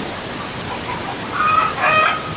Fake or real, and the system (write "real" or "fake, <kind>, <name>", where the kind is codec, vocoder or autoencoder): real